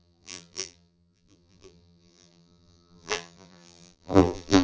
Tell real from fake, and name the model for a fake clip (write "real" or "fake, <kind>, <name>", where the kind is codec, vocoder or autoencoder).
fake, vocoder, BigVGAN v2